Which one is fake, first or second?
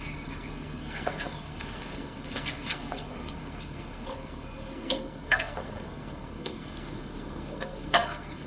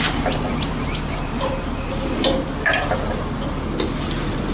first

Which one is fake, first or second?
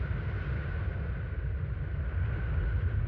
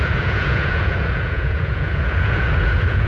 second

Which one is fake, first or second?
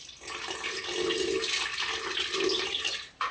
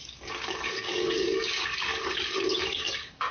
second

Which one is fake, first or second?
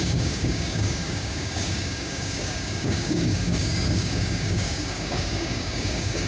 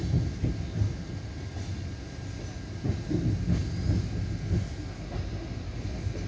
first